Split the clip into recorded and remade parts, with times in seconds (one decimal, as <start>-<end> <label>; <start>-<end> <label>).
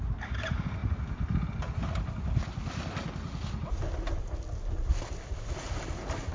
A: 0.0-6.3 recorded